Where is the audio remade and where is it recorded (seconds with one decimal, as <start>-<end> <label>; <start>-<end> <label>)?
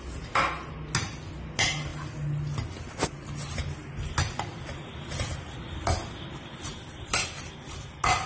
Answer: 0.0-8.3 recorded